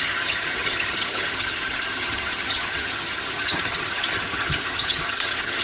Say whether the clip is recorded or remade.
remade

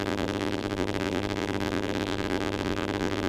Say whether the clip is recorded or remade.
remade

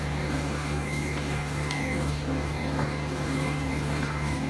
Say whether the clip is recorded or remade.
remade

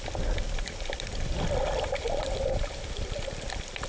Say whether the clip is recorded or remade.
remade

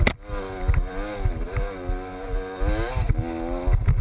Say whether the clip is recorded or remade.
recorded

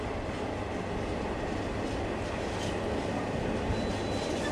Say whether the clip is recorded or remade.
recorded